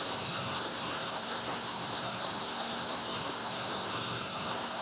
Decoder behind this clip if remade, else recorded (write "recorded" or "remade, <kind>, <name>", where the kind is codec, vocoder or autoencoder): remade, codec, SNAC